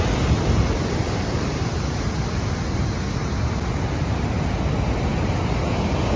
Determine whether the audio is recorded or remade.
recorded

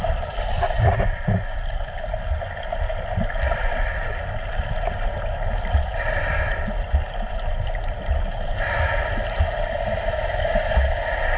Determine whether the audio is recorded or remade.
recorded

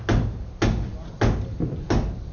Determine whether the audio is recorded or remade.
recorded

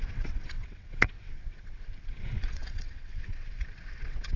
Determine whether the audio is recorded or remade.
remade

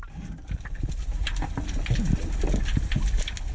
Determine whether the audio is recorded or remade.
recorded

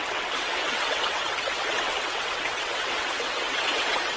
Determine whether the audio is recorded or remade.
remade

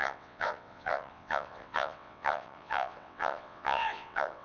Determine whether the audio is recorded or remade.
remade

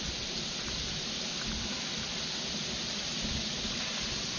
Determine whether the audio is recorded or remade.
recorded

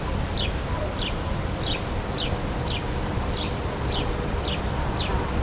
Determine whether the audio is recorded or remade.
recorded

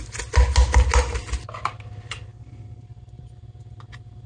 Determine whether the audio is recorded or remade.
recorded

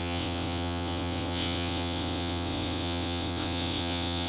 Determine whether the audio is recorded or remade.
remade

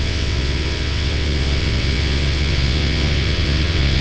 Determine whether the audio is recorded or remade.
remade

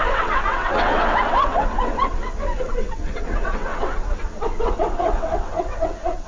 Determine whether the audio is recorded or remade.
remade